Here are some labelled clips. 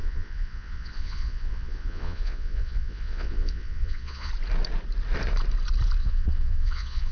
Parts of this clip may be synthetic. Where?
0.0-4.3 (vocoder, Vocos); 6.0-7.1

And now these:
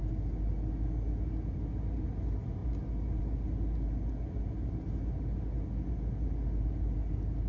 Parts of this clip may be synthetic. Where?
none

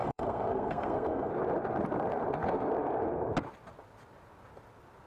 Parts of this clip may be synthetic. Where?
0.0-1.3 (codec, SNAC)

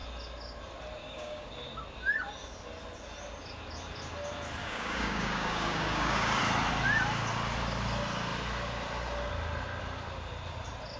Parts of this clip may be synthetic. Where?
1.0-1.5 (codec, DAC); 4.6-6.4

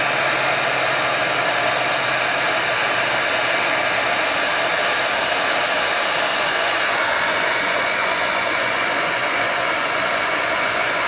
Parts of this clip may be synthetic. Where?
6.3-11.1 (vocoder, Vocos)

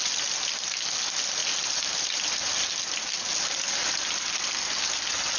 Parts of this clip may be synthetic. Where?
none